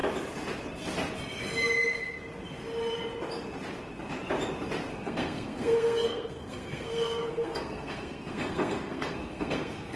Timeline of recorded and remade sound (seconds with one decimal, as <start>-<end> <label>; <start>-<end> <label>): 0.0-4.9 recorded; 4.9-10.0 remade